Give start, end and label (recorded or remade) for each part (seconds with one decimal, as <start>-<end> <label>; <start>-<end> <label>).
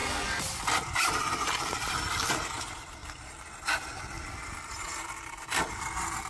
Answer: 0.0-1.2 recorded; 1.2-6.3 remade